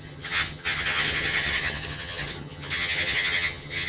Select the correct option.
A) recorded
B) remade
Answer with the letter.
B